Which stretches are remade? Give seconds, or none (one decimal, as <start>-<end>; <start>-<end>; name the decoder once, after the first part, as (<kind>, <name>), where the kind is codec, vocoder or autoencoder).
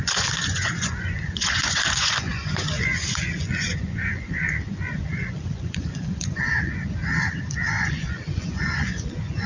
0.0-7.0 (vocoder, Vocos); 7.6-9.5